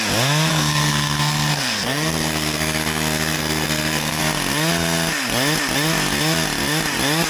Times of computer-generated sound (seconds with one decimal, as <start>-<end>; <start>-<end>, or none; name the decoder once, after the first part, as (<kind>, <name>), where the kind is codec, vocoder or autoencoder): 0.5-4.2 (codec, SNAC)